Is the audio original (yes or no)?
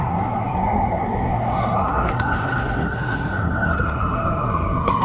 no